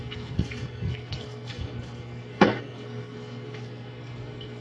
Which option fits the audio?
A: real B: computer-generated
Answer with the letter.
B